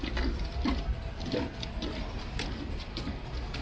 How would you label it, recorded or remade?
recorded